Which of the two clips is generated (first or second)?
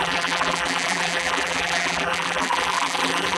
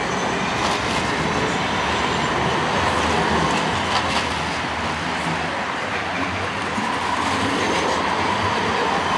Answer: first